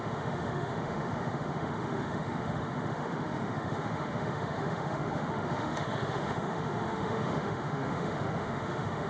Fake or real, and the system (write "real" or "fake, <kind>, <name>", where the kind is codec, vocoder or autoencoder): fake, autoencoder, DAC-VAE